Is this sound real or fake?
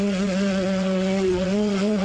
fake